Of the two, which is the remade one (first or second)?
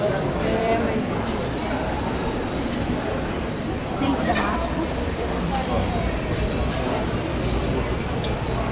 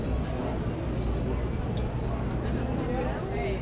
first